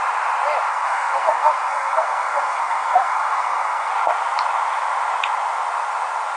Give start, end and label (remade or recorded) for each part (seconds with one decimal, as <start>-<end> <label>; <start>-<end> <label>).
0.0-0.7 recorded; 0.7-3.9 remade; 3.9-6.4 recorded